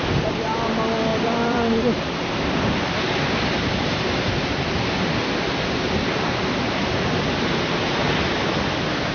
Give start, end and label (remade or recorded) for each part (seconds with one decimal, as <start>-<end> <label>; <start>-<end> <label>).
0.0-1.1 recorded; 1.1-4.1 remade; 4.1-9.1 recorded